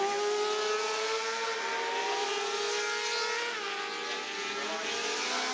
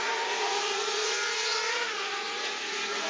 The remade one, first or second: second